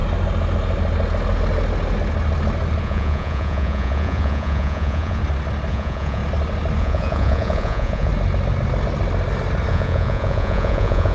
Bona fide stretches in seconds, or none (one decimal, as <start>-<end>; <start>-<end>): 0.0-2.8; 5.2-5.7; 6.2-6.8; 8.1-9.7